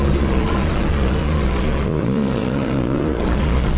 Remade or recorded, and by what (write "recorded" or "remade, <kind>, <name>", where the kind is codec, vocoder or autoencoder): remade, vocoder, Vocos